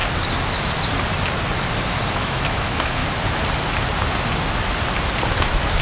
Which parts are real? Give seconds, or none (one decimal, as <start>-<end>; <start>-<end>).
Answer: 0.0-2.1; 3.0-5.3